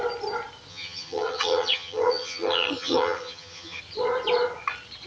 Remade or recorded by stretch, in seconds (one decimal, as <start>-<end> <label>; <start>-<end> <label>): 0.0-0.7 recorded; 0.7-3.8 remade; 3.8-5.1 recorded